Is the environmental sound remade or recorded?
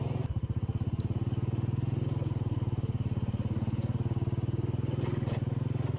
recorded